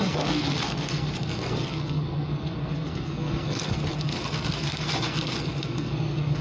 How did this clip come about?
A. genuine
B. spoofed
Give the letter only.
B